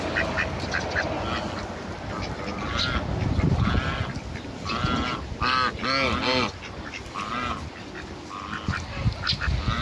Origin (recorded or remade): recorded